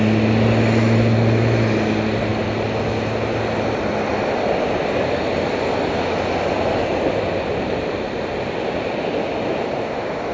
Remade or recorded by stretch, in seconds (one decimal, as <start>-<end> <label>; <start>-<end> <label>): 0.0-10.3 recorded